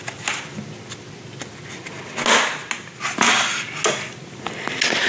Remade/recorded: recorded